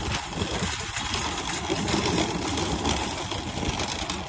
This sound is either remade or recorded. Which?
recorded